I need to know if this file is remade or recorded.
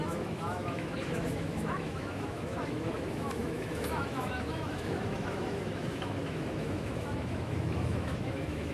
remade